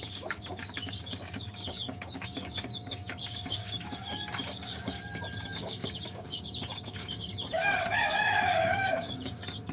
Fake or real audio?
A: fake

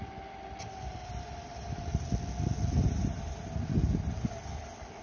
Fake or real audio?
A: real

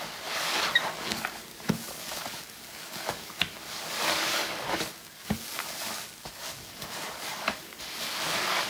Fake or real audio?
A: fake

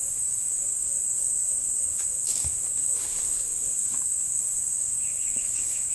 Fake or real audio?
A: fake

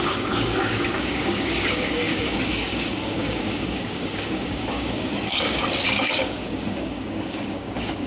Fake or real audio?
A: fake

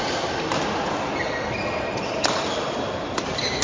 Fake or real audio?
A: real